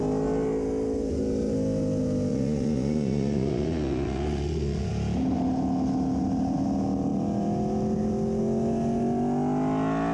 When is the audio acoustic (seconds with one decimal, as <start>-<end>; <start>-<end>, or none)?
0.0-2.3; 4.9-10.1